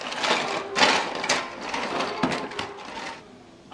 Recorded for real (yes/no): yes